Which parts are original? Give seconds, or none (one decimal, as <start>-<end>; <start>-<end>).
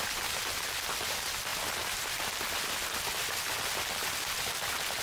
0.0-5.0